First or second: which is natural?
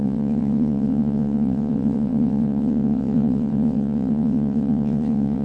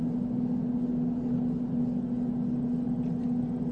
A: second